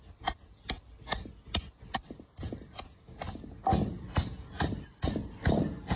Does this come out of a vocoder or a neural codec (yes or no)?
no